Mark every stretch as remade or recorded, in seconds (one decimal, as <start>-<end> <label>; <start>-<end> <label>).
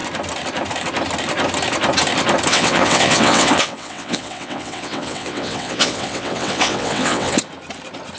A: 0.0-2.5 recorded; 2.5-7.4 remade; 7.4-8.2 recorded